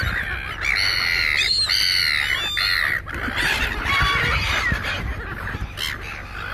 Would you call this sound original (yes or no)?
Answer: yes